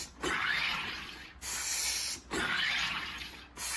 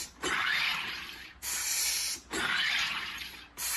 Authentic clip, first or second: first